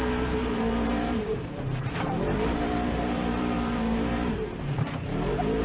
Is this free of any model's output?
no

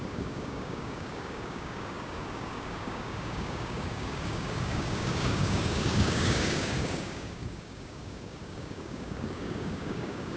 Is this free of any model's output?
no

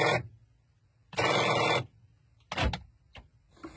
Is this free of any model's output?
yes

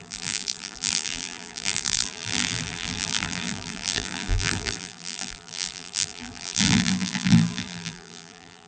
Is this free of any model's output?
no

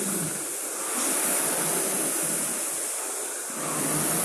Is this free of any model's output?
yes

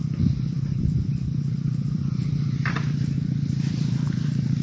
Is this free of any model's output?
no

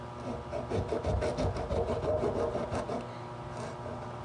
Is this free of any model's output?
yes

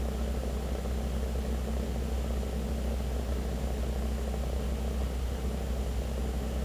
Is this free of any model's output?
yes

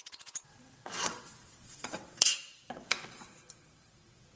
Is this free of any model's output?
no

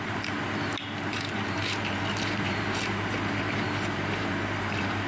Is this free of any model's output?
no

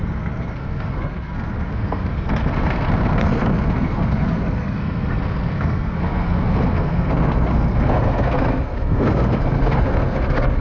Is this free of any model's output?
no